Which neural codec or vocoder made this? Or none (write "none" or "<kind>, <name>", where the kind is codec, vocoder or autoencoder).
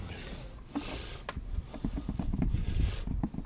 none